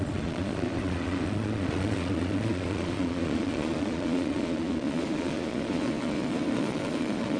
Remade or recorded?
remade